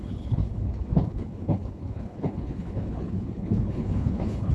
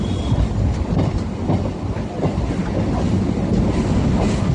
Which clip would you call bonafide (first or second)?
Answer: second